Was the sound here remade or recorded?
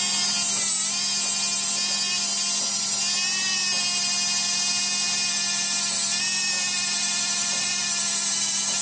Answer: recorded